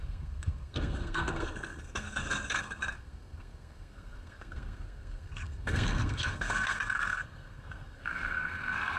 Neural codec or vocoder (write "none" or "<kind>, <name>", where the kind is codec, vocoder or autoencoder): codec, SNAC